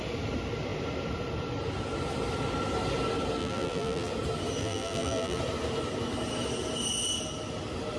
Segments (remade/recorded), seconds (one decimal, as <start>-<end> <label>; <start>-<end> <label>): 0.0-3.4 recorded; 3.4-4.1 remade; 4.1-4.6 recorded; 4.6-5.4 remade; 5.4-8.0 recorded